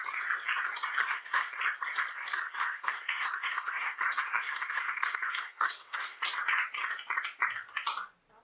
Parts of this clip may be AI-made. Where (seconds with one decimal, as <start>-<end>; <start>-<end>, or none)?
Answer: 1.0-1.6; 2.1-6.2